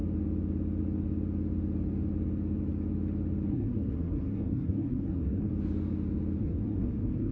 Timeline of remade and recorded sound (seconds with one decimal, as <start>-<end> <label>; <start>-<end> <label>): 0.0-3.5 recorded; 3.5-5.5 remade; 5.5-6.4 recorded; 6.4-7.3 remade